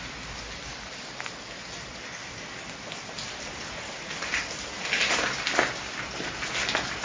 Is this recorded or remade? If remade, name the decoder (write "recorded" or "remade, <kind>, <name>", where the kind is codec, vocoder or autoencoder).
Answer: recorded